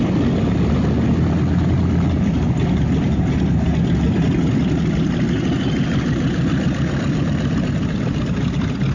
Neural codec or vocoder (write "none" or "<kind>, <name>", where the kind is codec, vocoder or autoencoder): none